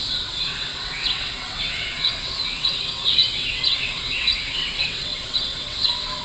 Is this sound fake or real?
fake